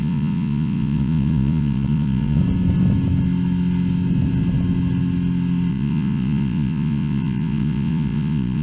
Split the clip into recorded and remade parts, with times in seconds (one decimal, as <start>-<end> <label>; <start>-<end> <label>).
0.0-2.4 remade; 2.4-5.7 recorded; 5.7-8.6 remade